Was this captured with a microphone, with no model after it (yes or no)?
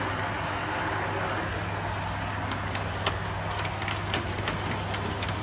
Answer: yes